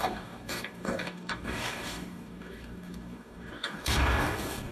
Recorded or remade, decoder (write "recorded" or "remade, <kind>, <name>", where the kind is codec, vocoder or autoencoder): remade, codec, DAC